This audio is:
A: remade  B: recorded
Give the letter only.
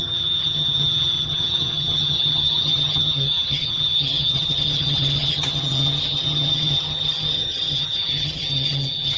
A